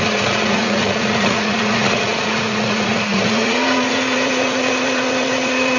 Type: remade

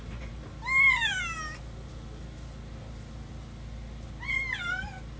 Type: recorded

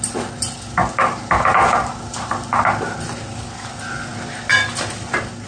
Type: recorded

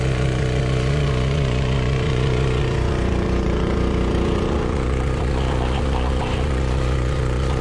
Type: remade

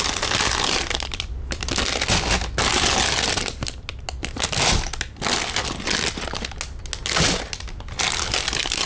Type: recorded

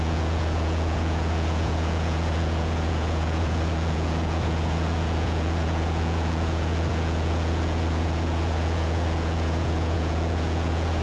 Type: remade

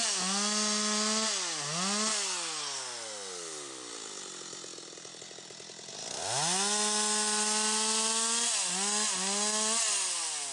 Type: recorded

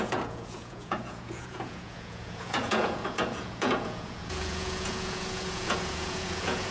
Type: remade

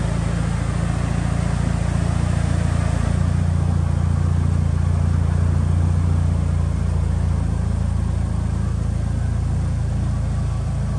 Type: recorded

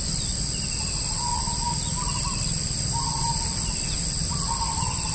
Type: recorded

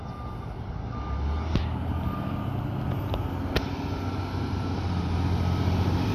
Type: recorded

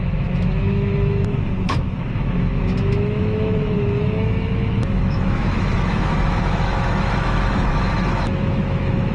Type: remade